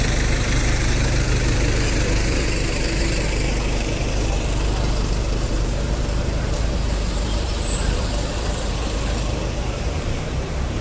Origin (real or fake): fake